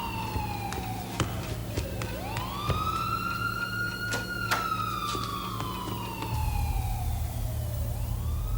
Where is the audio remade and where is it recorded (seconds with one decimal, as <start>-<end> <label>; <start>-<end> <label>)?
0.0-8.6 recorded